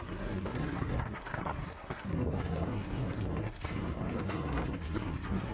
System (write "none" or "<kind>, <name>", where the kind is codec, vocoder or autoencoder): codec, SNAC